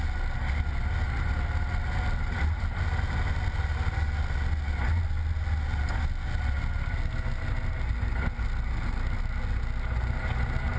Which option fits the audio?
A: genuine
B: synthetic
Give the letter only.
A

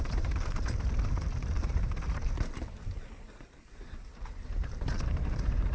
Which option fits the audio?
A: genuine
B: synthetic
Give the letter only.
B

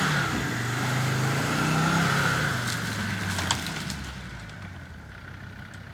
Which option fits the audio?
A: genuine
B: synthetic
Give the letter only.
A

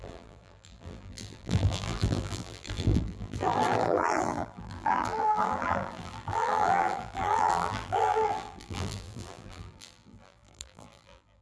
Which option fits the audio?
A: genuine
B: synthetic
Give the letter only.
B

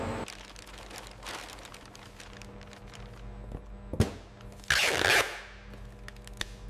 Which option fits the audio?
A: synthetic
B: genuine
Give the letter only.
B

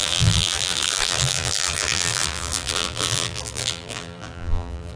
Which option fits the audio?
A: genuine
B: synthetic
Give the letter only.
B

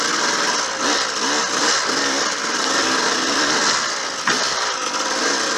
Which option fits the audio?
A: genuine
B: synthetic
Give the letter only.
A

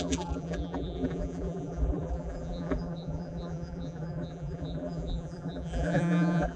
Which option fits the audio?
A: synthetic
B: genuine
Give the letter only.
A